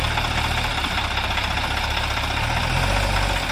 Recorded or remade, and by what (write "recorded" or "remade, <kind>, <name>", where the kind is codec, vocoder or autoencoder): recorded